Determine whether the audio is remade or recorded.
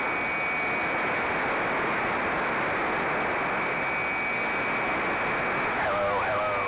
recorded